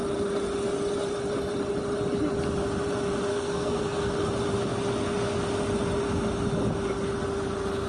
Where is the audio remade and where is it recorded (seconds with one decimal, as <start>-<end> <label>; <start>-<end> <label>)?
0.0-3.3 recorded; 3.3-4.3 remade; 4.3-7.9 recorded